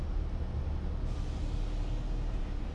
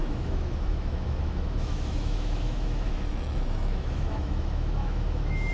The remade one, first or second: second